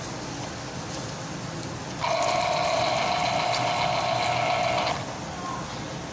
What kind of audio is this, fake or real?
real